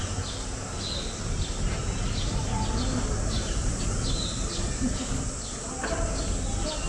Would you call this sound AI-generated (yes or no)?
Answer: no